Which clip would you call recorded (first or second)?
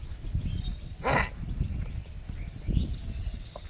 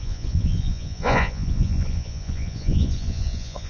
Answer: first